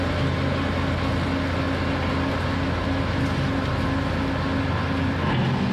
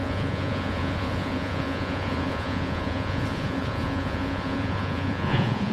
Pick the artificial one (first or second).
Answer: second